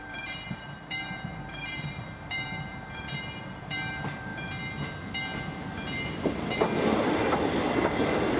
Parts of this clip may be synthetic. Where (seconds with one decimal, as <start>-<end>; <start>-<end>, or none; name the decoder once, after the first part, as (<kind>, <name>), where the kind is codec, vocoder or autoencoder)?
0.0-2.7 (vocoder, BigVGAN v2); 3.4-4.3; 6.4-8.4